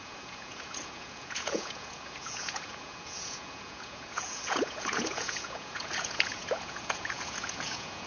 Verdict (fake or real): fake